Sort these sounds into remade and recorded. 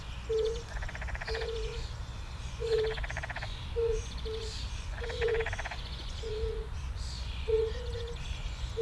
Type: remade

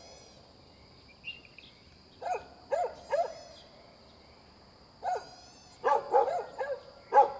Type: recorded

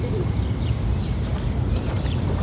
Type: recorded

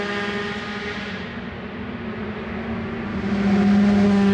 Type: recorded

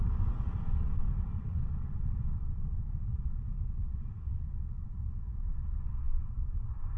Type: remade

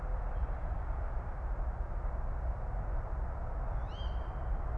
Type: recorded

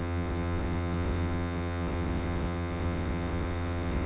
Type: remade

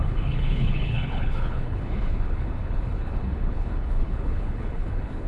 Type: remade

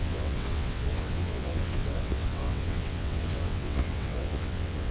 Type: remade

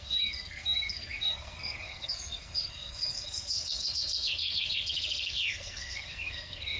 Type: remade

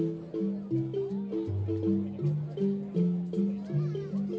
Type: recorded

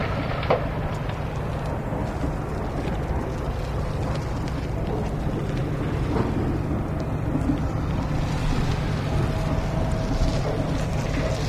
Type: recorded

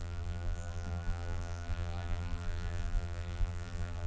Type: remade